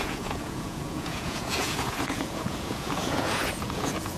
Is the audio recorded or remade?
remade